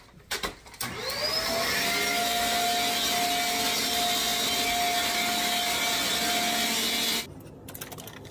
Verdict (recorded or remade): recorded